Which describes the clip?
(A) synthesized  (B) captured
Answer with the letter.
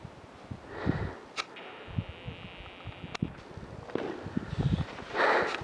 B